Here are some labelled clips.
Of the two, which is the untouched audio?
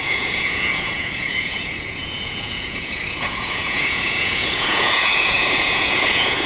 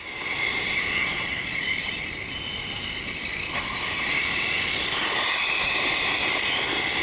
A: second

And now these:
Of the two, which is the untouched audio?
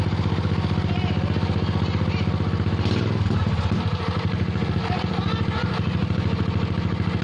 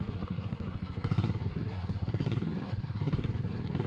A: first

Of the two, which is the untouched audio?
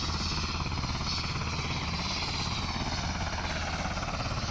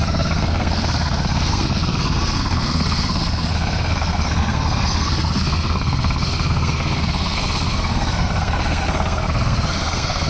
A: first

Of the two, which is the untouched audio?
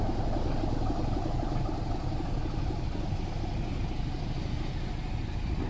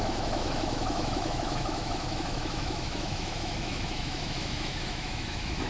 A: first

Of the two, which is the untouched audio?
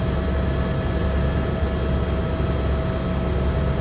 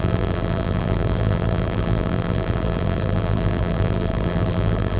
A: first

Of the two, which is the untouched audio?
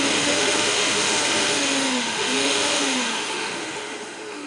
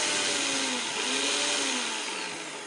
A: second